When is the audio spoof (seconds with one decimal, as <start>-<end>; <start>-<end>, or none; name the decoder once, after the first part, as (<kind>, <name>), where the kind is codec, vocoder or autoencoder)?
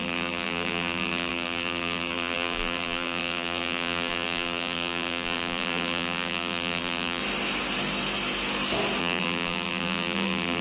0.0-7.2 (vocoder, BigVGAN v2); 9.0-10.6